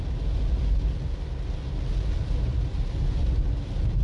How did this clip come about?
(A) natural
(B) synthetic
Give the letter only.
A